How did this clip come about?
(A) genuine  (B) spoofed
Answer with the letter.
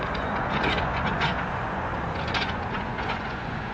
B